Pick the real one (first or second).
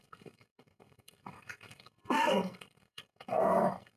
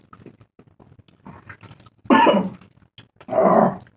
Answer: second